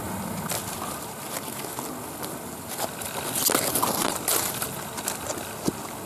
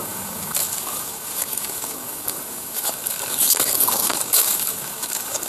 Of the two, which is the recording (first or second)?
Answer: first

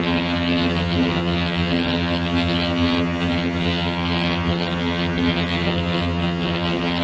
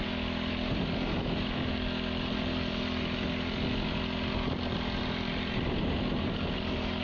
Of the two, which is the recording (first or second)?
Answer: second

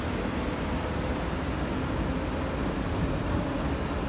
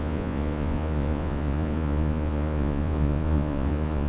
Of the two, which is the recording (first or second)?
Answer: first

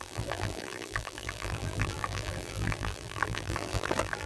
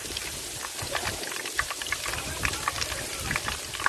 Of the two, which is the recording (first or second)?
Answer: second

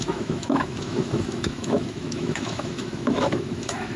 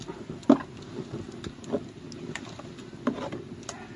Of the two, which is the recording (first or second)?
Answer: second